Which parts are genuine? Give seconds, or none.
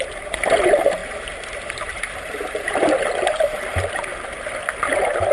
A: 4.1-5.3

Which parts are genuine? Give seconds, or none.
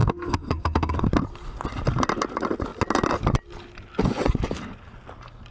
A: 1.1-5.5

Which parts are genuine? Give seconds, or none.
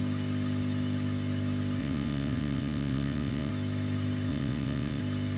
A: 0.0-1.8; 3.5-4.3; 5.0-5.4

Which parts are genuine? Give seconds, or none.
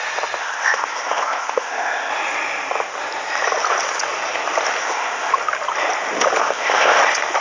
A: 0.0-0.4; 2.1-4.8; 5.3-6.4; 7.0-7.4